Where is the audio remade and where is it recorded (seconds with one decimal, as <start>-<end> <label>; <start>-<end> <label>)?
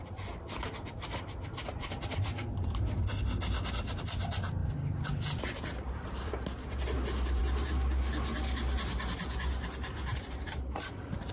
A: 0.0-11.3 recorded